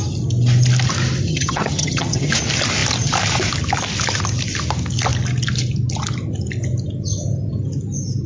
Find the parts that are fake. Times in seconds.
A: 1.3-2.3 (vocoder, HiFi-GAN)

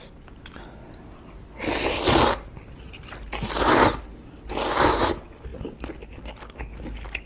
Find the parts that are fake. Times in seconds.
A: none

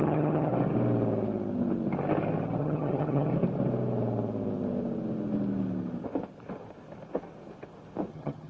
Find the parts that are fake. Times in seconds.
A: 0.0-0.5 (vocoder, HiFi-GAN); 2.6-3.3; 8.1-8.5

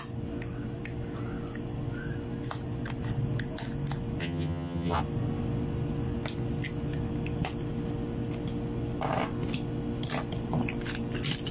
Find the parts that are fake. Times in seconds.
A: 4.2-5.0 (vocoder, HiFi-GAN)

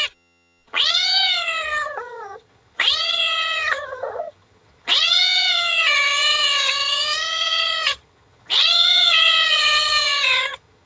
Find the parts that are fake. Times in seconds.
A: 0.0-10.9 (vocoder, HiFi-GAN)

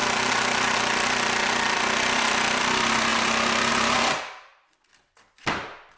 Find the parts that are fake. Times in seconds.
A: none

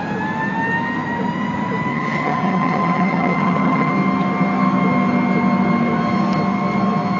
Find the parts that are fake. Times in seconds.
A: 1.9-3.9 (vocoder, HiFi-GAN)